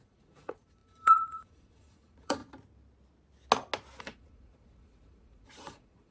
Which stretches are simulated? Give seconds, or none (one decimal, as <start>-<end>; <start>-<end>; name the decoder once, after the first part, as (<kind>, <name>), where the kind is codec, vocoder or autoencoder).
0.0-2.4 (vocoder, Vocos); 4.0-6.1